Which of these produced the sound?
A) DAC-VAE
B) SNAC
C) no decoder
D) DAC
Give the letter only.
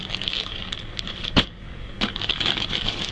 D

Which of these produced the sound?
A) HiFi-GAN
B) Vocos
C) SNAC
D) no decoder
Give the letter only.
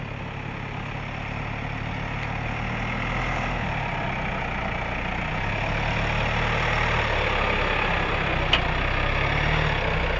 D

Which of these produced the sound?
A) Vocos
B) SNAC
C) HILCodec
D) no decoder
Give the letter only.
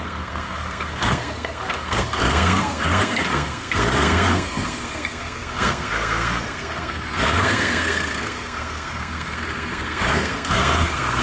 B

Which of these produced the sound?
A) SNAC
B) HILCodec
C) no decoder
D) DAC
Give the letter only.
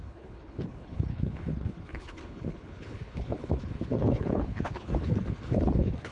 B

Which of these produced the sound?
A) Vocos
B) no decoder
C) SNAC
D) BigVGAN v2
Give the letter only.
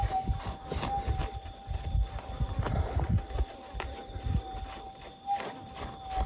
B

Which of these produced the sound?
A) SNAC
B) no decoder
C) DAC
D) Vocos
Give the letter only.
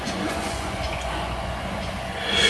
D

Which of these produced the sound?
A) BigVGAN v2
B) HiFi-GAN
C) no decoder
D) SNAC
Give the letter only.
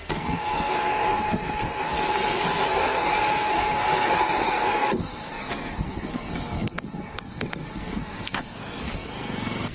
D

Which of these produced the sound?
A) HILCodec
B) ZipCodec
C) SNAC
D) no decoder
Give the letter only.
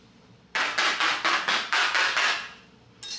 D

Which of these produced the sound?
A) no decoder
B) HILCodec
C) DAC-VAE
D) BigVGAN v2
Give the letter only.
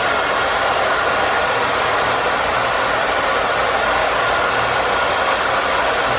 A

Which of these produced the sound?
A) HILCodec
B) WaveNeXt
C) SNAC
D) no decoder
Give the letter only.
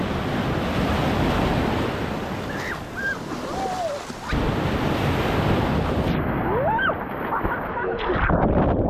D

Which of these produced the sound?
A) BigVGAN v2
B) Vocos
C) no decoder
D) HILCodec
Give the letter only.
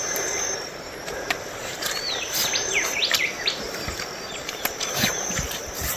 A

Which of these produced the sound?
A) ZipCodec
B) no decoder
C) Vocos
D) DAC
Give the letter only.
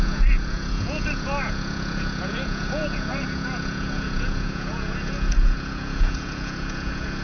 C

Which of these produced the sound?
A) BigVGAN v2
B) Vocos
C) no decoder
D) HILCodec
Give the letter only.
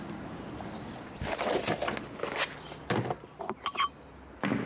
C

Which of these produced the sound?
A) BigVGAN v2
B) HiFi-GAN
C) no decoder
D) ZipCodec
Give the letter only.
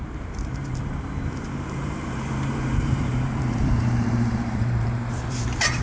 A